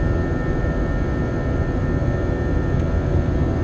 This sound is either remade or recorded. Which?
recorded